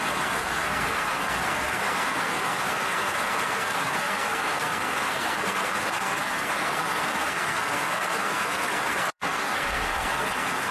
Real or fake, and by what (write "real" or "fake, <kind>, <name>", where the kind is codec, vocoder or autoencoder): fake, codec, SNAC